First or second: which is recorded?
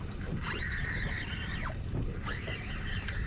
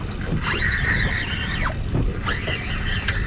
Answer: second